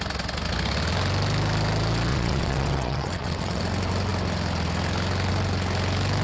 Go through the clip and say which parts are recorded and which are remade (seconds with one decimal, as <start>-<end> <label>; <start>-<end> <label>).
0.0-2.1 recorded; 2.1-3.6 remade; 3.6-6.2 recorded